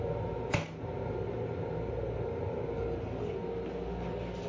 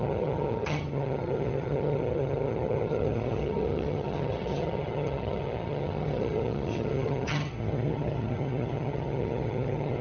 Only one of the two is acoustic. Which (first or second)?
first